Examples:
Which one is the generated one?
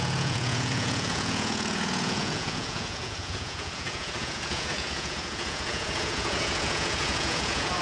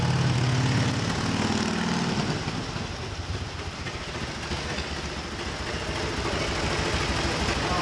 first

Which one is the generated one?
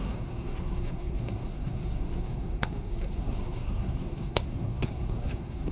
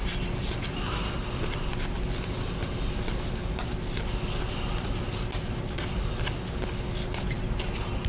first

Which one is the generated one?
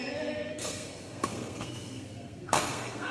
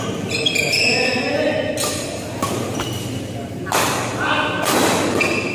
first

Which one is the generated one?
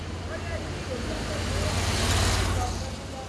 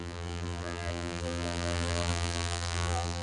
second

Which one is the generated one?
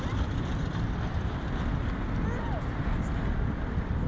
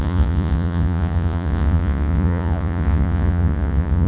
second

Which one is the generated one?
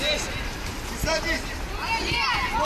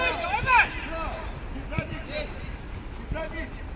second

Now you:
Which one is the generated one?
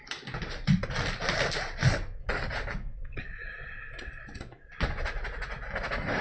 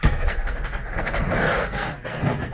second